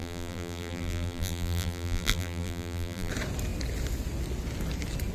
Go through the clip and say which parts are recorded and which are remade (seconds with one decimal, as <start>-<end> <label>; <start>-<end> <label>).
0.0-3.1 remade; 3.1-5.1 recorded